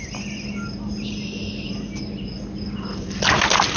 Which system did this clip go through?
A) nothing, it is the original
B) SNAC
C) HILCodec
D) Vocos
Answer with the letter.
A